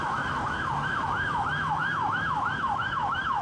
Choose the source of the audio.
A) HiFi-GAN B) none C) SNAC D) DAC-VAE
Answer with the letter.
D